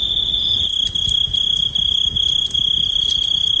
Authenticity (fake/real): fake